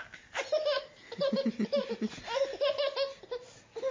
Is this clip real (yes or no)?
yes